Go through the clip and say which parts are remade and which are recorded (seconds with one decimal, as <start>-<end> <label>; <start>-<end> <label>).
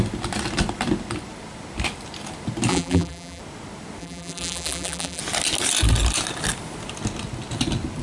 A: 0.0-2.7 recorded; 2.7-3.4 remade; 3.4-4.0 recorded; 4.0-5.2 remade; 5.2-8.0 recorded